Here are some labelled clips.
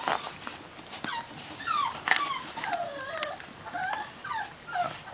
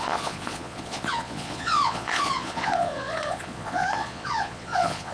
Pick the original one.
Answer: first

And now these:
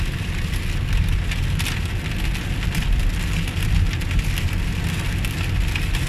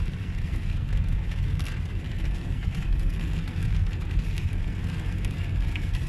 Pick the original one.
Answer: first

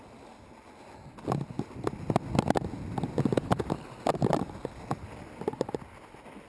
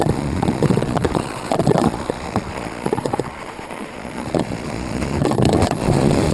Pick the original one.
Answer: first